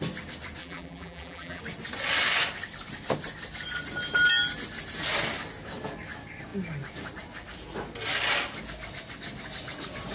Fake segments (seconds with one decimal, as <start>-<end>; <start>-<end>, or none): 0.6-1.6

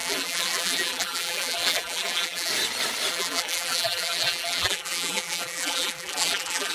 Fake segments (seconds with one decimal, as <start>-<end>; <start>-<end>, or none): 0.0-2.5; 3.1-6.7

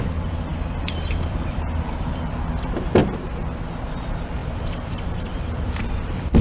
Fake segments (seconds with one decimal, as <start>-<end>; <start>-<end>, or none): 0.0-3.0; 3.9-6.4

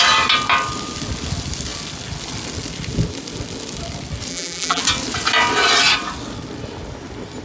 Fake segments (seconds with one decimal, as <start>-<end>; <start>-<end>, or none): 4.3-4.8

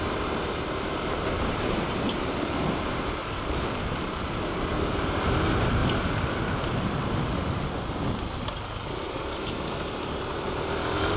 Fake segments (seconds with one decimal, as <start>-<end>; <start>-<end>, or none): 0.0-5.8; 6.9-7.4; 9.0-11.2

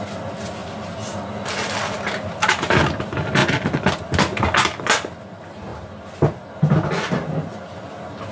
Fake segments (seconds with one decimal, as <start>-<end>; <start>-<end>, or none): 3.4-4.0; 5.7-6.2

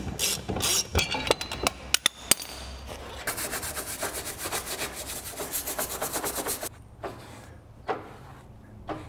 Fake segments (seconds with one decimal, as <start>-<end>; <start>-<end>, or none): none